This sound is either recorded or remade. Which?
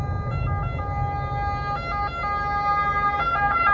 recorded